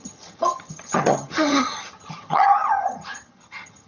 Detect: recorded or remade remade